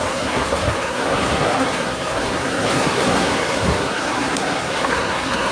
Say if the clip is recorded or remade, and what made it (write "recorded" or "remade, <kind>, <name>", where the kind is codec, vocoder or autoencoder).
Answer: remade, codec, SNAC